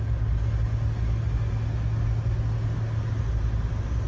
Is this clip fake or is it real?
real